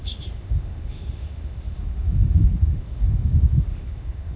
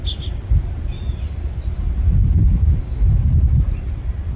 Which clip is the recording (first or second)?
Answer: second